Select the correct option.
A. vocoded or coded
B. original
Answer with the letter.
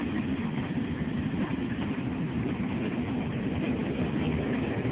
B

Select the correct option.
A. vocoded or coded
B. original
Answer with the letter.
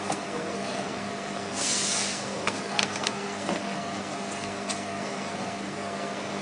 A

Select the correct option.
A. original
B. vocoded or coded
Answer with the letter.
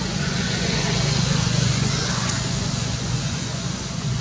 B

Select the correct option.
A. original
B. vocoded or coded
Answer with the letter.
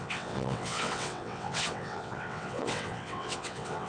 B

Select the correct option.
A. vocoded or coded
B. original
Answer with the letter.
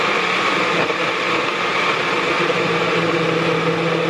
B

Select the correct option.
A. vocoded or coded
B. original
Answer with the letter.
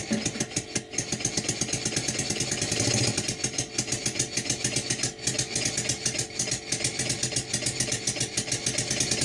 B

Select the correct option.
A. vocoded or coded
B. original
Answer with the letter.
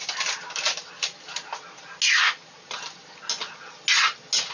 B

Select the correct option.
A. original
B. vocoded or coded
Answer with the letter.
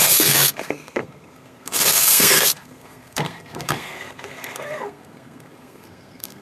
B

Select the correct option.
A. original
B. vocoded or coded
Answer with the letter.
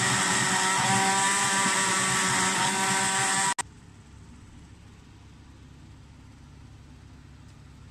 A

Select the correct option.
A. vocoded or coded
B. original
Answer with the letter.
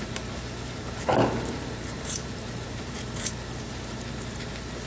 A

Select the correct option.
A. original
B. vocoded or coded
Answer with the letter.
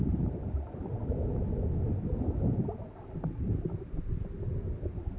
A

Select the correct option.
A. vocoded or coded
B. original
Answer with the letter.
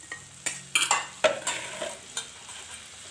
B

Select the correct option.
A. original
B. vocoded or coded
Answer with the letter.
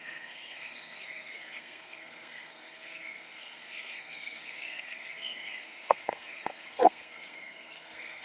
B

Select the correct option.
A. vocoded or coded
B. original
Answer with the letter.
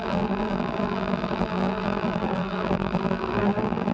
A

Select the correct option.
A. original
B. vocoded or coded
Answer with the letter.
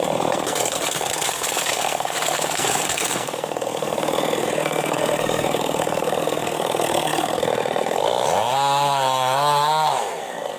B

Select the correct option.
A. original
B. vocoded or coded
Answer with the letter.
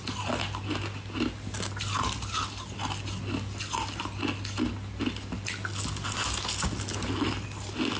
A